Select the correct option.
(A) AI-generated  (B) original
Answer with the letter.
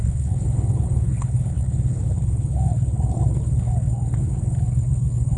A